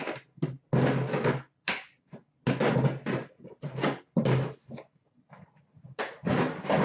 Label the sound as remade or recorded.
recorded